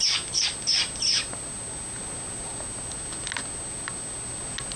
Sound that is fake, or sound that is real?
real